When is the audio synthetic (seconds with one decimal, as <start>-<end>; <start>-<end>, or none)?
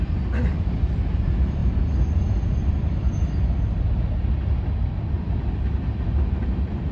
0.5-1.2